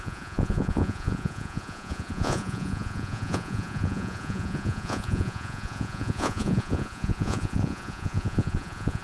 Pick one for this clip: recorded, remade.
remade